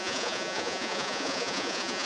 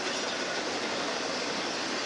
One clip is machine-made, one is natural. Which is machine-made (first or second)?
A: first